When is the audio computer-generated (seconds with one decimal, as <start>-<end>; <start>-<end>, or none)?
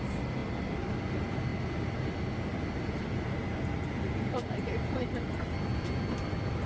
none